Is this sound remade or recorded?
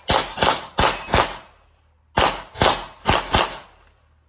recorded